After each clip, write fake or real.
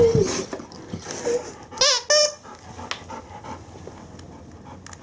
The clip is real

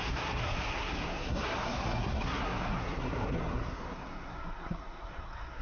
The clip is fake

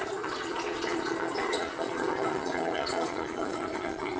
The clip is fake